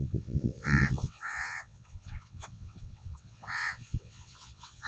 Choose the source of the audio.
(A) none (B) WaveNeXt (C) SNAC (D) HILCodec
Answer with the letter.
B